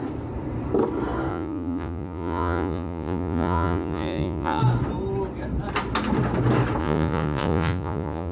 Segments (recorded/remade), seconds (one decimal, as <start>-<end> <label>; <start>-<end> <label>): 0.0-1.3 recorded; 1.3-4.6 remade; 4.6-6.8 recorded; 6.8-8.3 remade